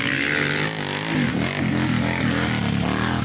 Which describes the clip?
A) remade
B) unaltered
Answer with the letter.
B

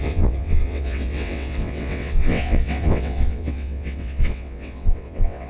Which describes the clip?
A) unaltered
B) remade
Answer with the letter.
B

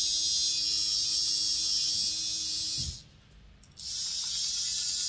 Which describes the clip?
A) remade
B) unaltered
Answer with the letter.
B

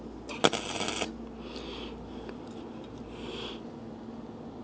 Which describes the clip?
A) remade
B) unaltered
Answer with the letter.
B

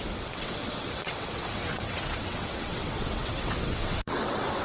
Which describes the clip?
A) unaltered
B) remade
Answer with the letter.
B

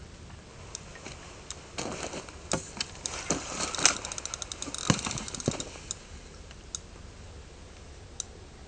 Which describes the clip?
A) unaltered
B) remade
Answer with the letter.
A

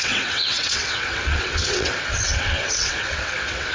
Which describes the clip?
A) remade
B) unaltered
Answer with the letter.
A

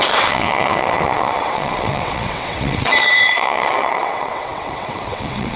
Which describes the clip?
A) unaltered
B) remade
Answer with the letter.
B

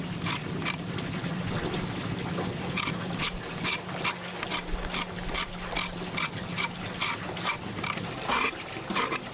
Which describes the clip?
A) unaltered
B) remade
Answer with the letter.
A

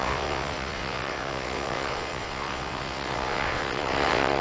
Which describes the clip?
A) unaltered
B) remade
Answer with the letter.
B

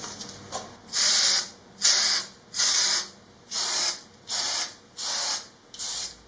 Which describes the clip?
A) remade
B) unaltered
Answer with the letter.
B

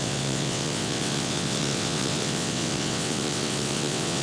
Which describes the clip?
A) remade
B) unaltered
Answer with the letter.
A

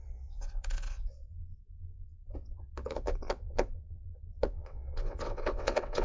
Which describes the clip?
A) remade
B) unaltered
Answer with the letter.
A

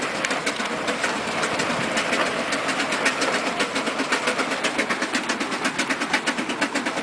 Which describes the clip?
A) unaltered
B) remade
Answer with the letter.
A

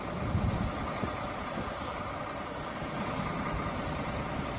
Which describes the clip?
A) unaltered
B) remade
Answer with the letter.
A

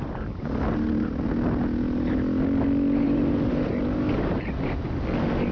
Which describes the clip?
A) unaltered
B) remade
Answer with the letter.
A